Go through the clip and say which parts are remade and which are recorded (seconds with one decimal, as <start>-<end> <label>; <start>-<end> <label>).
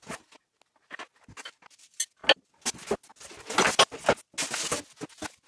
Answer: 0.0-5.5 recorded